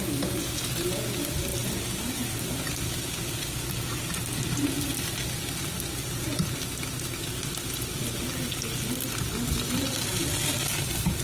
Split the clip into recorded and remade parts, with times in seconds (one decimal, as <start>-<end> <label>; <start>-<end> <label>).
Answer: 0.0-1.5 recorded; 1.5-2.6 remade; 2.6-11.2 recorded